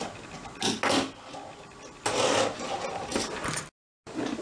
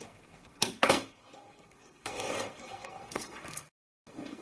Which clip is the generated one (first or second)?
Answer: second